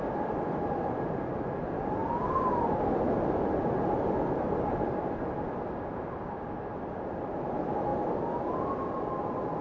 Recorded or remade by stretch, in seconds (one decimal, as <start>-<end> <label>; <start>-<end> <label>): 0.0-9.6 recorded